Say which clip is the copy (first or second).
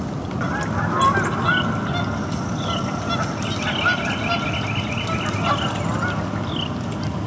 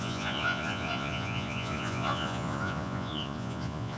second